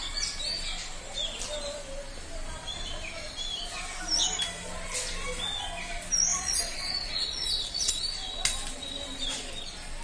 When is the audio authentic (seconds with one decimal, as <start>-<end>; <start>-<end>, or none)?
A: 0.0-6.3; 7.9-10.0